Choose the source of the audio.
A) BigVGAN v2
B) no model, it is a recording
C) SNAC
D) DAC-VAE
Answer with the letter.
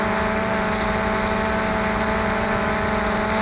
B